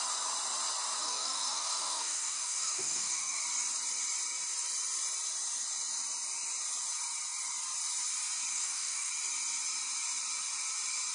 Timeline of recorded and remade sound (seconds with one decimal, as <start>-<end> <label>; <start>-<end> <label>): 0.0-1.0 recorded; 1.0-3.4 remade; 3.4-8.5 recorded; 8.5-9.1 remade; 9.1-11.1 recorded